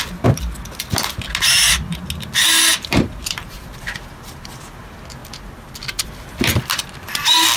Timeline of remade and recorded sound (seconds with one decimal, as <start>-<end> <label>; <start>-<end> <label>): 0.0-2.7 recorded; 2.7-4.8 remade; 4.8-7.6 recorded

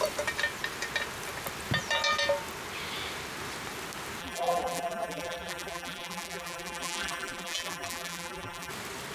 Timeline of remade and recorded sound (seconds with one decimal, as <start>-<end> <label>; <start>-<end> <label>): 0.0-4.2 recorded; 4.2-8.7 remade; 8.7-9.1 recorded

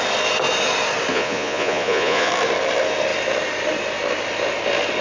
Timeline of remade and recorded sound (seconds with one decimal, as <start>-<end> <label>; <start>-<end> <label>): 0.0-1.1 recorded; 1.1-2.3 remade; 2.3-5.0 recorded

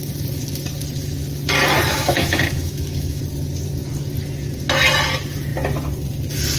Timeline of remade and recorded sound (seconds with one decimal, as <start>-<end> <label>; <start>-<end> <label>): 0.0-1.9 recorded; 1.9-3.2 remade; 3.2-6.6 recorded

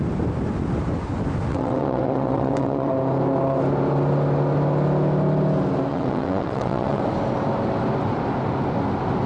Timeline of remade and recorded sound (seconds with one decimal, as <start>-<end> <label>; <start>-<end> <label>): 0.0-1.5 recorded; 1.5-2.9 remade; 2.9-5.9 recorded; 5.9-7.0 remade; 7.0-9.3 recorded

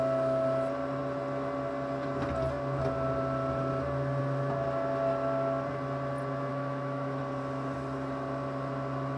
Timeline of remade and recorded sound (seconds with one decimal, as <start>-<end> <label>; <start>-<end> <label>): 0.0-6.5 recorded; 6.5-7.2 remade; 7.2-9.2 recorded

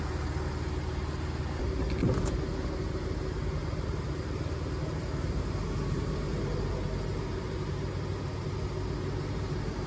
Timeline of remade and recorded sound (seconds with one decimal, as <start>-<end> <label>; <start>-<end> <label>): 0.0-7.1 recorded; 7.1-7.7 remade; 7.7-9.9 recorded